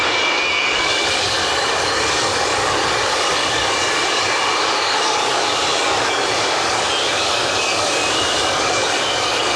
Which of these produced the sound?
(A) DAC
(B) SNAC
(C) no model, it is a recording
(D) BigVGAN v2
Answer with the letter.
A